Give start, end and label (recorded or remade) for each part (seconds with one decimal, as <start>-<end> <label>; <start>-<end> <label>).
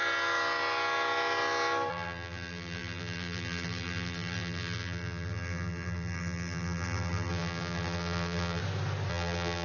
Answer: 0.0-1.9 recorded; 1.9-8.6 remade; 8.6-9.1 recorded; 9.1-9.6 remade